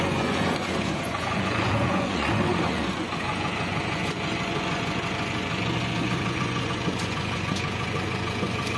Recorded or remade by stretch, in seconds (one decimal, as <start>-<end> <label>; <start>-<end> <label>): 0.0-8.8 remade